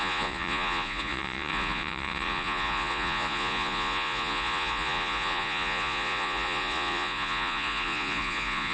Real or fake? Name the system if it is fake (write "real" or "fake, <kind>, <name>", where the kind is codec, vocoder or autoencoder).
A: fake, vocoder, Vocos